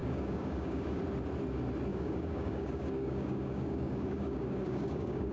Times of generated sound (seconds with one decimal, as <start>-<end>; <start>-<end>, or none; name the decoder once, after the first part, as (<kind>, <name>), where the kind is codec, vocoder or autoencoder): 0.0-1.0 (codec, DAC); 1.9-5.3